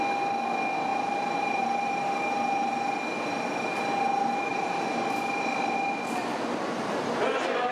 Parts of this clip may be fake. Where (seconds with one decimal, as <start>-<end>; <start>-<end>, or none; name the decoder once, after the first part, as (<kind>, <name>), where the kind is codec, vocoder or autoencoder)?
0.9-2.7 (vocoder, BigVGAN v2); 4.5-5.4